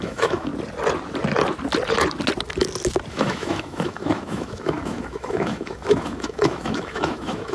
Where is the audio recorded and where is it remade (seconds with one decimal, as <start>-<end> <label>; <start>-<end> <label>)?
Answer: 0.0-0.5 remade; 0.5-3.1 recorded; 3.1-7.5 remade